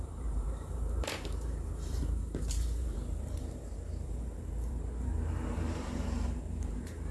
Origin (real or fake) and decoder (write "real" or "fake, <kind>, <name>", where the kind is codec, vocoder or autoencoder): fake, vocoder, BigVGAN v2